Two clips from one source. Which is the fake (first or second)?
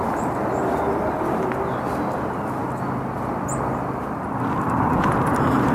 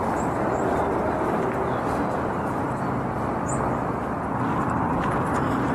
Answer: second